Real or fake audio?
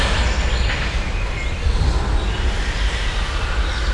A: real